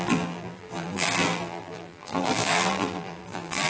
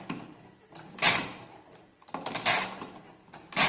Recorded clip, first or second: second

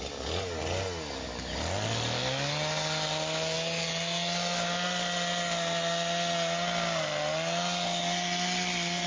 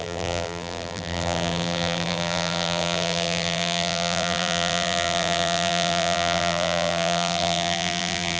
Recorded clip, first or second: first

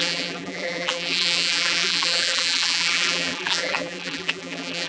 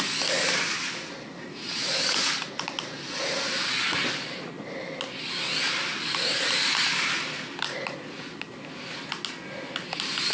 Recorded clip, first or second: second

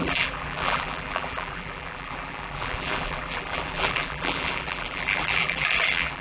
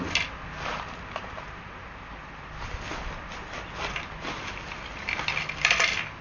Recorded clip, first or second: second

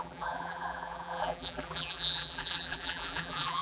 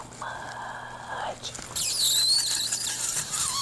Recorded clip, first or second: second